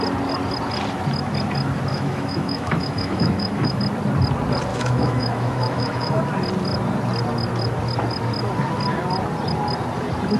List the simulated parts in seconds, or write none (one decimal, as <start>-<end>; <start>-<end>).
1.9-3.8; 4.7-6.2